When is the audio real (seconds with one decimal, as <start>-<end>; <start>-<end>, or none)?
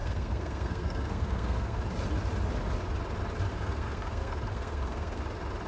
1.8-3.5; 5.2-5.7